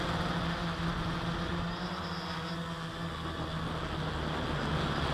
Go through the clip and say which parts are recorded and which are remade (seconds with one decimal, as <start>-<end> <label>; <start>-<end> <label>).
0.0-1.5 recorded; 1.5-2.1 remade; 2.1-5.1 recorded